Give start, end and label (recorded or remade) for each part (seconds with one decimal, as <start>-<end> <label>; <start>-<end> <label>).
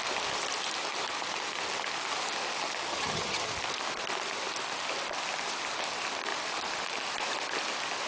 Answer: 0.0-2.9 recorded; 2.9-3.5 remade; 3.5-8.1 recorded